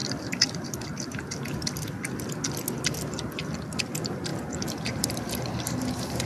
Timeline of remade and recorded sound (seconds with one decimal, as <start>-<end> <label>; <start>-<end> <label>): 0.0-3.8 remade; 3.8-4.3 recorded; 4.3-5.8 remade; 5.8-6.3 recorded